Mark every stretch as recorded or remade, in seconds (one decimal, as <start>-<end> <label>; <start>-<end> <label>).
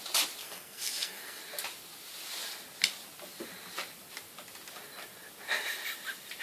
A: 0.0-0.4 recorded; 0.4-1.4 remade; 1.4-6.4 recorded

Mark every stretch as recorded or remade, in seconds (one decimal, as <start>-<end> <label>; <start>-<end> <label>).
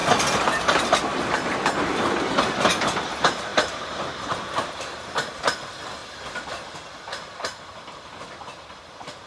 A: 0.0-3.5 recorded; 3.5-5.4 remade; 5.4-9.3 recorded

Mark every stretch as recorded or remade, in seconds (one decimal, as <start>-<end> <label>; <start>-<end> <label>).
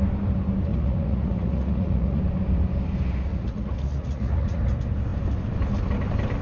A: 0.0-0.7 recorded; 0.7-2.2 remade; 2.2-3.3 recorded; 3.3-4.6 remade; 4.6-6.4 recorded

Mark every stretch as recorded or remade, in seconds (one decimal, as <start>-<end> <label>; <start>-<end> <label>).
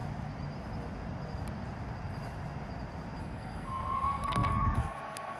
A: 0.0-3.2 recorded; 3.2-5.4 remade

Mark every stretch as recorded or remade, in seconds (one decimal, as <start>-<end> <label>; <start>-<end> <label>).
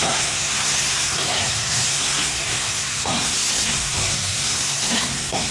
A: 0.0-5.5 remade